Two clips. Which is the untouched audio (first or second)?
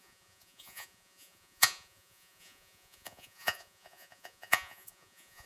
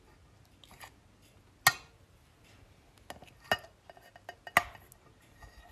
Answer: second